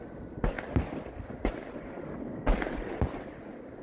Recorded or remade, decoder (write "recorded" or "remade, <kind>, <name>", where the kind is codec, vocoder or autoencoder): remade, vocoder, BigVGAN v2